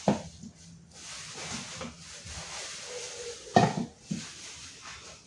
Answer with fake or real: real